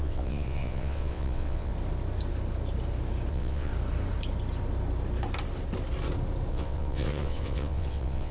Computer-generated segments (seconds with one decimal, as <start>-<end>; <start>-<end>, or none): 0.0-1.7; 3.3-3.7; 6.5-8.3